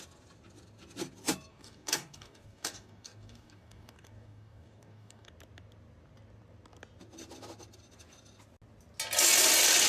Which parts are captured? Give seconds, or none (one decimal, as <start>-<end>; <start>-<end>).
0.0-1.5; 5.3-9.9